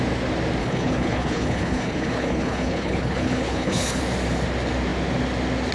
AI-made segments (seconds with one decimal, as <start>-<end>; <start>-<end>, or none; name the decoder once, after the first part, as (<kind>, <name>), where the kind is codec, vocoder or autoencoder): 0.6-4.0 (codec, HILCodec)